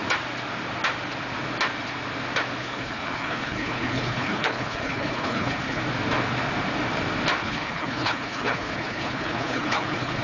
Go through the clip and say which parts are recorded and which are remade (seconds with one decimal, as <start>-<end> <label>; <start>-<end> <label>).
0.0-2.6 recorded; 2.6-5.8 remade; 5.8-7.4 recorded; 7.4-10.2 remade